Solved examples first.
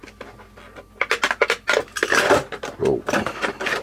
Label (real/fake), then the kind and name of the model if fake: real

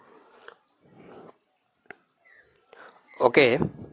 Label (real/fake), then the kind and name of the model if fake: real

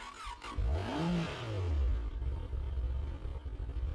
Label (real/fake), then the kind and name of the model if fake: real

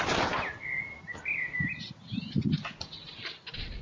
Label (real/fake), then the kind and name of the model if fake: real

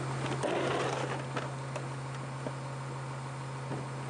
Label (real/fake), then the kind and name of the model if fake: real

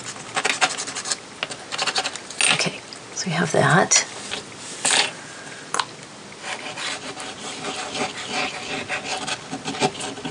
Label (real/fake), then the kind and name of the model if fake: real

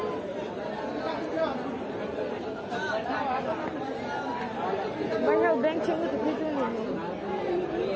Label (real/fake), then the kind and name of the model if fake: real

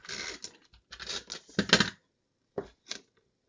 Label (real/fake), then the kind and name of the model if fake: real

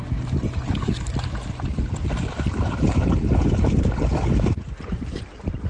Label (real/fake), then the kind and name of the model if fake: real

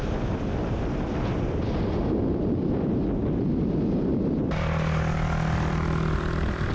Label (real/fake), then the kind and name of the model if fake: real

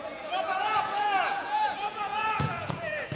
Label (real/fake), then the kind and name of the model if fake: fake, vocoder, Vocos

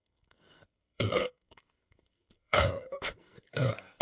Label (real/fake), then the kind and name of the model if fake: fake, codec, SNAC